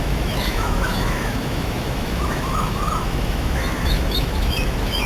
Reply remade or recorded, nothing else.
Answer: remade